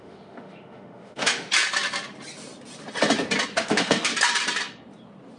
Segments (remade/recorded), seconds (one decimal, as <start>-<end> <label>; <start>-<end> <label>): 0.0-1.5 remade; 1.5-3.5 recorded; 3.5-4.1 remade; 4.1-5.4 recorded